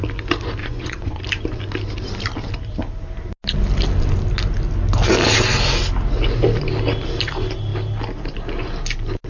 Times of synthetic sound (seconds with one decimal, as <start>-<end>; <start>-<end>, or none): 0.6-1.2